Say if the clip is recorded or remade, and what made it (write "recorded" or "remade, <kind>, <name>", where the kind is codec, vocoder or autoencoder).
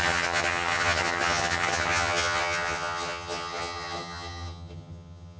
remade, vocoder, HiFi-GAN